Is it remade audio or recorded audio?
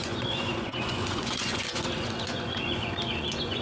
remade